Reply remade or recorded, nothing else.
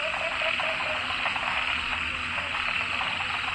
recorded